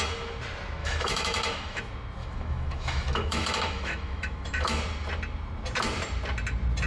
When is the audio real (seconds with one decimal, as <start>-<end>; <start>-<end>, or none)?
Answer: 0.0-0.8; 1.8-2.2; 4.8-6.9